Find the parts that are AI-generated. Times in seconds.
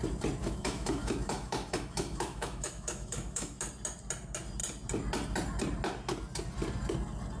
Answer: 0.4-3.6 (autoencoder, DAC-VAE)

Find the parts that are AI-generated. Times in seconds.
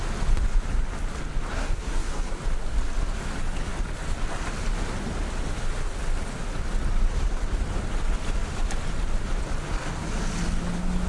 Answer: 1.5-2.4 (codec, SNAC)